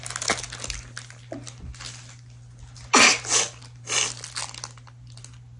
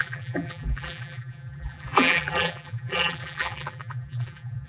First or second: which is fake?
second